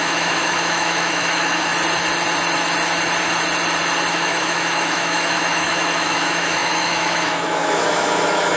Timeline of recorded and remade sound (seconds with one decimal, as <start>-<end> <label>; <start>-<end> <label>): 0.0-1.7 remade; 1.7-4.1 recorded; 4.1-8.6 remade